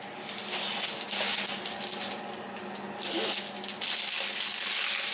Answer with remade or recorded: recorded